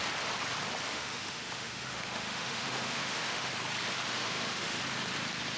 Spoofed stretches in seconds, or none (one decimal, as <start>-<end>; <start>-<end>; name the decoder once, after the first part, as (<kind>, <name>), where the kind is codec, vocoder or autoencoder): 0.9-3.5 (autoencoder, DAC-VAE); 4.1-4.8